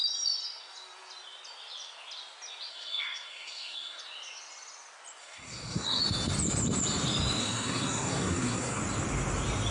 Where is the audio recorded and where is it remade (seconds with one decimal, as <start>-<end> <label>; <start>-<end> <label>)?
0.0-2.7 recorded; 2.7-4.0 remade; 4.0-5.2 recorded; 5.2-6.0 remade; 6.0-7.4 recorded; 7.4-8.8 remade; 8.8-9.7 recorded